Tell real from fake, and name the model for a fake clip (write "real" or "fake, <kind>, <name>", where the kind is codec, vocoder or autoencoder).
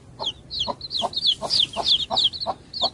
real